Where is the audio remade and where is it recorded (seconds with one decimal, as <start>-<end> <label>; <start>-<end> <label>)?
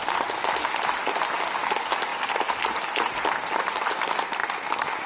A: 0.0-5.1 recorded